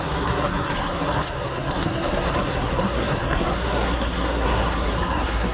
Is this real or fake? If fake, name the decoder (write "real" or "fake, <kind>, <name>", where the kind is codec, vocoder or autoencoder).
fake, codec, SNAC